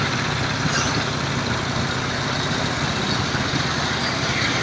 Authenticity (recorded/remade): recorded